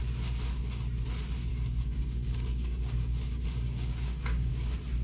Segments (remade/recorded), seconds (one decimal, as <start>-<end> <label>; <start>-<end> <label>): 0.0-1.5 recorded; 1.5-4.5 remade; 4.5-5.0 recorded